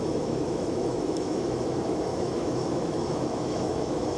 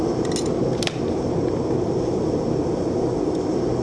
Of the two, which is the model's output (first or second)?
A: first